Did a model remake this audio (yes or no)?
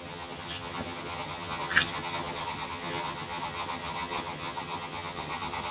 yes